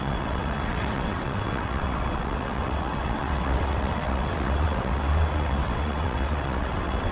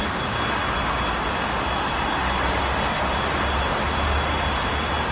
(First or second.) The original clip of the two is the second